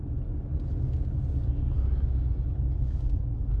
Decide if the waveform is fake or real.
real